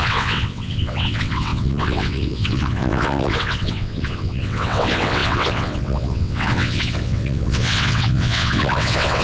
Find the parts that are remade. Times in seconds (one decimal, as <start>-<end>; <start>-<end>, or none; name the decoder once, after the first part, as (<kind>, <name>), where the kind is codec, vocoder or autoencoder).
0.0-9.2 (vocoder, WaveNeXt)